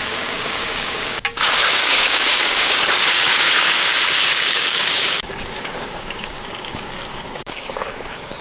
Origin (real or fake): fake